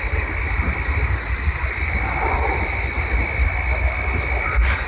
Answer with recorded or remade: recorded